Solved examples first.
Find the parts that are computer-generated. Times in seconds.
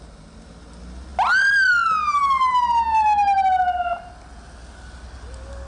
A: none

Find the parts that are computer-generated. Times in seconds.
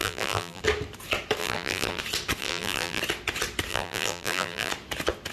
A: 0.0-0.6 (vocoder, BigVGAN v2); 1.4-2.0; 2.4-3.0; 3.7-4.7